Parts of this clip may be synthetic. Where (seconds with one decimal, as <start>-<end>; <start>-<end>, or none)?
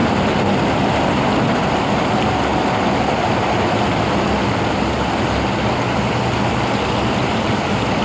none